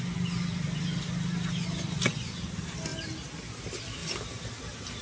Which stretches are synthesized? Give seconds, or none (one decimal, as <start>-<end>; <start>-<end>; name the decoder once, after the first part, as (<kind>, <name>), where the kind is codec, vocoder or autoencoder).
none